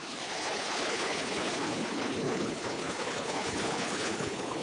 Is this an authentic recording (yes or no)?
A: no